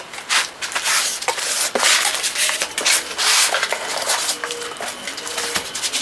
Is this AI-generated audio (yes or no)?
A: no